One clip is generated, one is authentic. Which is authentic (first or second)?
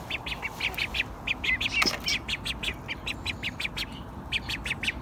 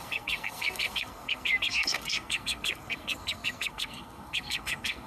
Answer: first